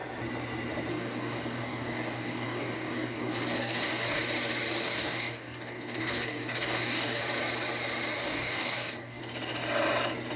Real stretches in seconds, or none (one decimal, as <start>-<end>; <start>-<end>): 0.0-0.9; 4.2-4.8; 7.2-8.1; 9.2-10.4